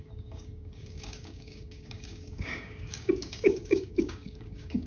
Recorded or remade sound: remade